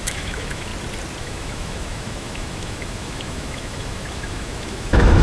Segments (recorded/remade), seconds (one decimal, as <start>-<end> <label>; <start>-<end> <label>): 0.0-0.7 remade; 0.7-1.2 recorded; 1.2-5.2 remade